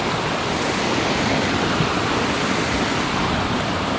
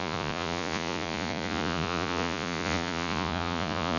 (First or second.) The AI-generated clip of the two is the second